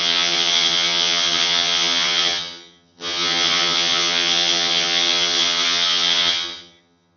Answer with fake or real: fake